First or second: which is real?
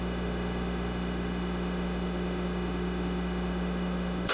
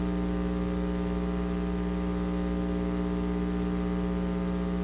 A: second